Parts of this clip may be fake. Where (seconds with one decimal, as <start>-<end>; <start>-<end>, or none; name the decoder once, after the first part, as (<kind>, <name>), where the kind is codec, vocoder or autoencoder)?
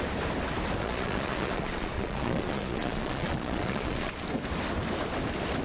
0.8-4.1 (vocoder, Vocos)